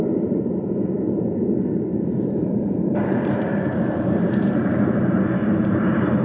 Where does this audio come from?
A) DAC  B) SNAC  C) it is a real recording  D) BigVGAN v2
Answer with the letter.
D